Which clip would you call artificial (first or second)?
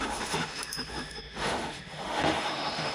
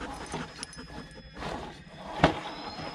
first